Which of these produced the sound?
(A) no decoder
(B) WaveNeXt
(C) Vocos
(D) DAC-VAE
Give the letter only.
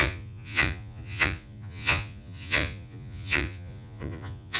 C